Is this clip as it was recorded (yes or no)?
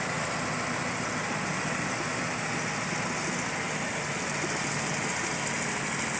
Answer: yes